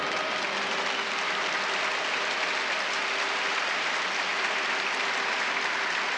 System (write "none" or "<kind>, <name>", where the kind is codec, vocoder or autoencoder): none